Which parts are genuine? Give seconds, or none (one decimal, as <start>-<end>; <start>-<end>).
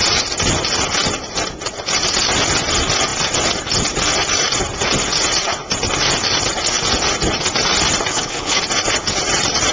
0.0-8.1; 8.6-9.7